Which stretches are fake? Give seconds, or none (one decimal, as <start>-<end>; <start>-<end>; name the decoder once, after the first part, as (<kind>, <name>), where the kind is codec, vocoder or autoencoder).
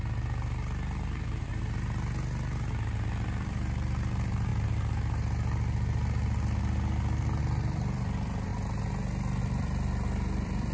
0.0-1.5 (vocoder, BigVGAN v2); 2.7-4.5; 7.4-8.5; 9.4-10.7